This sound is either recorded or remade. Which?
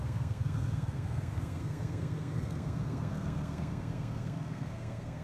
remade